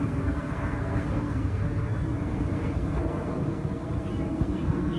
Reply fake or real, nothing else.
fake